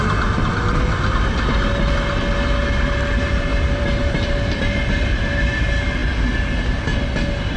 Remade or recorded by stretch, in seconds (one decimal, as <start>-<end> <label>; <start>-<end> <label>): 0.0-3.5 recorded; 3.5-4.9 remade; 4.9-7.6 recorded